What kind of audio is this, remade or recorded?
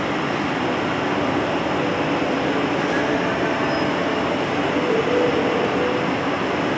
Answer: recorded